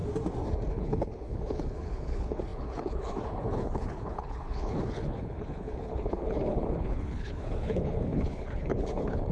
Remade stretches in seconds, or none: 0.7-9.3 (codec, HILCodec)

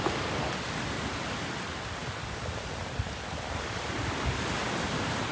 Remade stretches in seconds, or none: 2.0-5.3 (vocoder, BigVGAN v2)

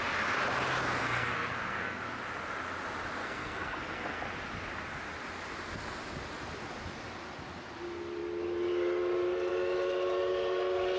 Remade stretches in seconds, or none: 1.0-2.0 (codec, SNAC); 3.2-4.2

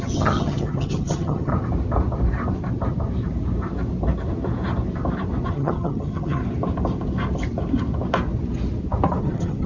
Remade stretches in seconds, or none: 0.0-1.5 (vocoder, HiFi-GAN); 5.5-6.4; 9.2-9.7

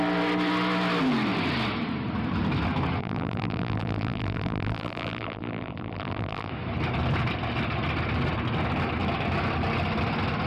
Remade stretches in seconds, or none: 3.0-6.5 (vocoder, BigVGAN v2)

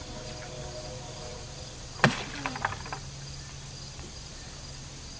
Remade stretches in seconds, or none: none